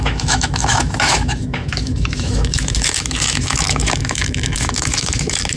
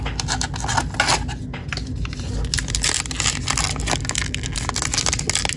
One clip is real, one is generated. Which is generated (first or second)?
first